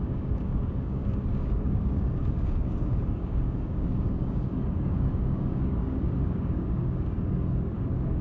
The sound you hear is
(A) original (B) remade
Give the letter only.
B